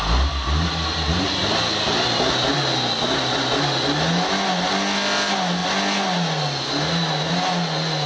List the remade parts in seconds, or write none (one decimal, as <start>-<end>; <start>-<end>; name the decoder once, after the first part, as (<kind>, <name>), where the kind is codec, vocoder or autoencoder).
none